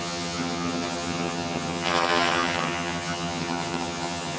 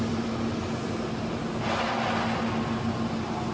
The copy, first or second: first